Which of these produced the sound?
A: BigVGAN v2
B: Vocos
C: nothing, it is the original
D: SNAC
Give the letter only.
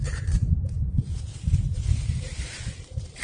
A